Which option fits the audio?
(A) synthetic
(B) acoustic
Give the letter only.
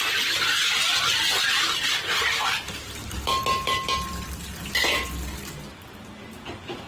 B